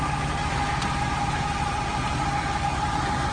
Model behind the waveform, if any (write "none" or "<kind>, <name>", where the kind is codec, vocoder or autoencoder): none